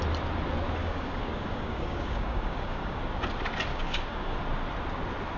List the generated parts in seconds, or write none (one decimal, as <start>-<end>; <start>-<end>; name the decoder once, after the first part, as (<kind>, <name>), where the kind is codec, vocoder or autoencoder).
0.8-3.0 (codec, DAC); 3.7-4.4